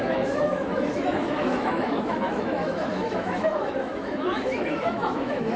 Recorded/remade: remade